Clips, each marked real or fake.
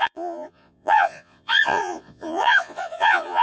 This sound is fake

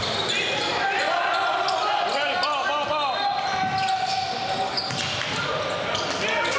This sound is real